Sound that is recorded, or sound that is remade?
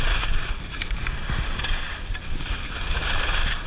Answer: recorded